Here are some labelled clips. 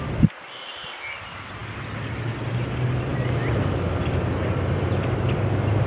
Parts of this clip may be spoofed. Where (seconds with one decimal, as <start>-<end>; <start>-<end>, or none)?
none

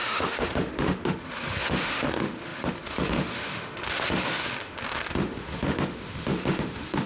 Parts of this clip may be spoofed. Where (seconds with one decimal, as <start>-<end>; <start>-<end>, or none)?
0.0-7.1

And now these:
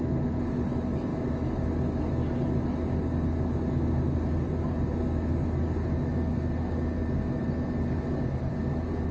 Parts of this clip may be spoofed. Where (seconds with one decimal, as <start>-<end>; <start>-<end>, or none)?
none